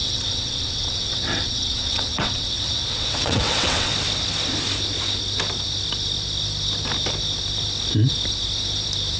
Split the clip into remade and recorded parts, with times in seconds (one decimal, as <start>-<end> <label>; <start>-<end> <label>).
0.0-3.9 remade; 3.9-9.2 recorded